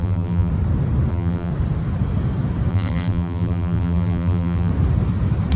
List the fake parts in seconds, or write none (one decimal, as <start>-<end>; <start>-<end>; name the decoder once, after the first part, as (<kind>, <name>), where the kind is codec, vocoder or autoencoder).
0.0-0.5 (vocoder, BigVGAN v2); 1.1-1.5; 2.7-4.7